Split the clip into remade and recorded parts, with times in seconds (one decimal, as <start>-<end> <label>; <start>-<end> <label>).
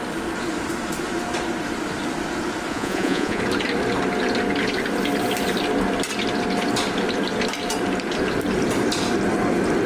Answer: 0.0-2.7 recorded; 2.7-3.4 remade; 3.4-9.9 recorded